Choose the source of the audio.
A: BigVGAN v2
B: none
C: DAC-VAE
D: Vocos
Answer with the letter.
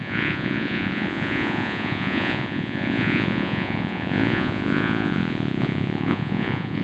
D